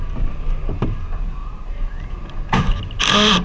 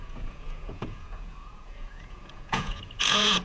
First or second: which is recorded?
first